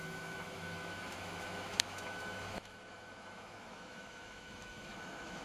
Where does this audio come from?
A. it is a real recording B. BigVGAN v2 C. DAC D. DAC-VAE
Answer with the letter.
D